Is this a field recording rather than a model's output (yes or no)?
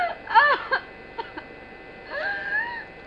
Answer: yes